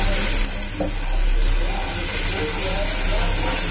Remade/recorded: recorded